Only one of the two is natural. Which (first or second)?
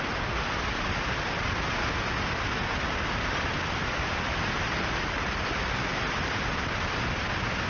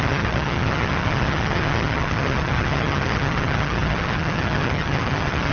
first